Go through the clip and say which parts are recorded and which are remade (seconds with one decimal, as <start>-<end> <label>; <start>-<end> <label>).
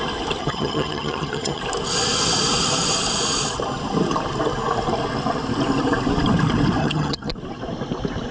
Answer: 0.0-0.4 recorded; 0.4-1.6 remade; 1.6-6.8 recorded; 6.8-7.3 remade; 7.3-8.3 recorded